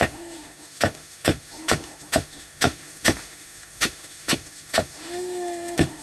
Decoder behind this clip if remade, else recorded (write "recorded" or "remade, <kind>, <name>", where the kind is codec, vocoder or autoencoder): remade, autoencoder, DAC-VAE